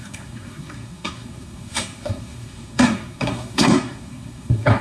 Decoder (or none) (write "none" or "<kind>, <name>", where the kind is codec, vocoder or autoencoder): codec, SNAC